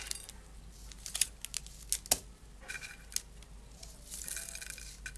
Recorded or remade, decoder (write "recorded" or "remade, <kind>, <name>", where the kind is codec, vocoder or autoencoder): recorded